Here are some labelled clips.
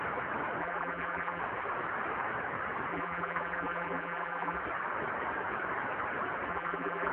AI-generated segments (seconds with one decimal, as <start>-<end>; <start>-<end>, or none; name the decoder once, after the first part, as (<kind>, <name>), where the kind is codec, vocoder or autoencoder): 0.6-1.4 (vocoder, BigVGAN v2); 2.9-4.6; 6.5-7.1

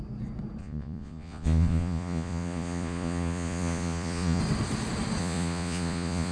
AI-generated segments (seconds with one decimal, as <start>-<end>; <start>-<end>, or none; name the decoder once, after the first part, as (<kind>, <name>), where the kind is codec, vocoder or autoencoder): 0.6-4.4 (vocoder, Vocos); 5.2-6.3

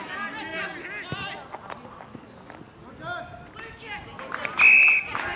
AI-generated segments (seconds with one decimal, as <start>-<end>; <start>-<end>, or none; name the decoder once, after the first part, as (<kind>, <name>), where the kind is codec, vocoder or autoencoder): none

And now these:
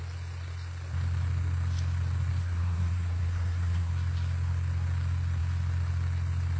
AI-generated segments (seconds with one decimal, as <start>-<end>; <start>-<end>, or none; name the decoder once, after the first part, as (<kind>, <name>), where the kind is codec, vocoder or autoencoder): 2.4-3.9 (codec, SNAC)